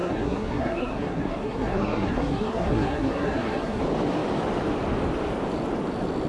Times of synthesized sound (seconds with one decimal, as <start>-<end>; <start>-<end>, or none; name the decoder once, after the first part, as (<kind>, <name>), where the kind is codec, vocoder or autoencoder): 0.0-3.8 (codec, SNAC)